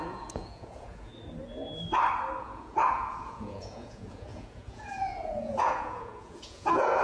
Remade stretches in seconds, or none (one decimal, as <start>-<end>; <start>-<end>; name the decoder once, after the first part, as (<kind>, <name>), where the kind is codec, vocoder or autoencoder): 0.0-1.1 (vocoder, Vocos); 2.4-7.0